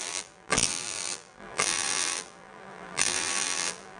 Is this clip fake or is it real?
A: fake